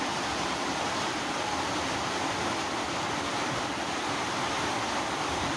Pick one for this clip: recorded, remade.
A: recorded